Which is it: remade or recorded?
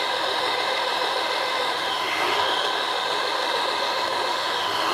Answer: remade